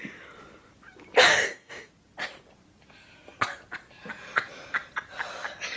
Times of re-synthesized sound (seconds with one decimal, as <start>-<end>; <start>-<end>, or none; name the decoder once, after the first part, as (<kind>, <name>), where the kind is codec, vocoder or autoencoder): 1.2-1.9 (codec, DAC)